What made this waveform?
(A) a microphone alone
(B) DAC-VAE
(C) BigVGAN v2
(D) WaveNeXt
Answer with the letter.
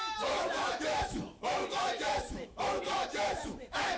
B